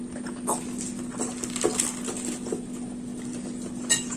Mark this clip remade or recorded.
recorded